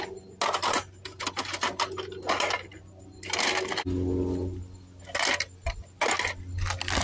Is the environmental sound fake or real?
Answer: real